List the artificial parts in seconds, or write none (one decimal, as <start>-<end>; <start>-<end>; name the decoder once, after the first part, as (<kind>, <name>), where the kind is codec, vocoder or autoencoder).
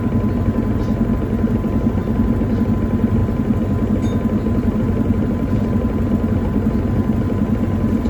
none